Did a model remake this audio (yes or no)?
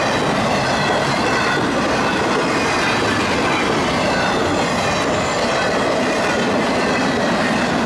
no